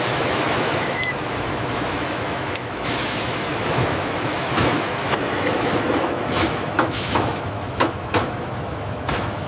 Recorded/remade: remade